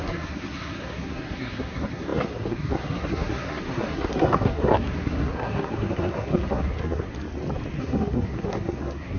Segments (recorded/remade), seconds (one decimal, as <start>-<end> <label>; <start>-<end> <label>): 0.0-7.1 remade; 7.1-7.8 recorded; 7.8-9.2 remade